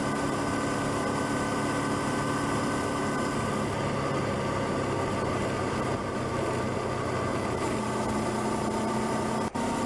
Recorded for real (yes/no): yes